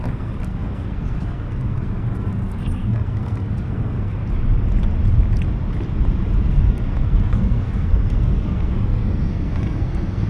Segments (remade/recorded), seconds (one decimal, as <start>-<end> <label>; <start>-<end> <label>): 0.0-4.2 remade; 4.2-6.5 recorded; 6.5-10.3 remade